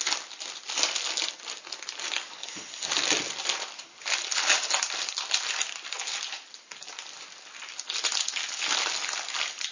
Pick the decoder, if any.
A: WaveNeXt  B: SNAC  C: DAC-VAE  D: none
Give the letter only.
D